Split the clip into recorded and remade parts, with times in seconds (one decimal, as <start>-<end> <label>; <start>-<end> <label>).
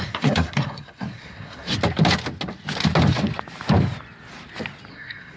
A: 0.0-1.7 remade; 1.7-4.9 recorded; 4.9-5.4 remade